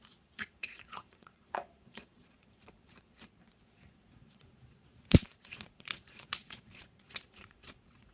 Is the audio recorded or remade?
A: remade